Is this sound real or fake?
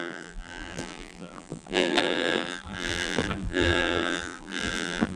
fake